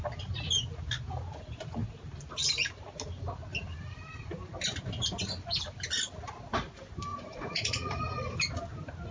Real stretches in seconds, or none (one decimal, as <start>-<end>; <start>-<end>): 0.0-7.1; 8.0-9.1